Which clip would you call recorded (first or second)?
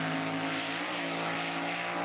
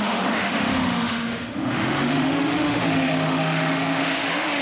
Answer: first